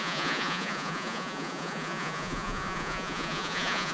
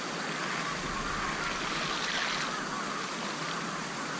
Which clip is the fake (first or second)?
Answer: first